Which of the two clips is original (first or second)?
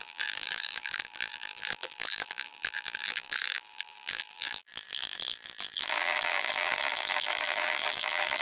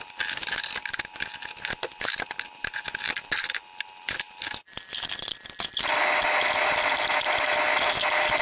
second